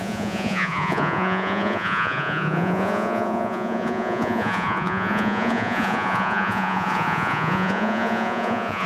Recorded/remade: remade